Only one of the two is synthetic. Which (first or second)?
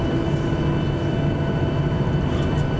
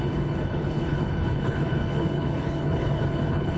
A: second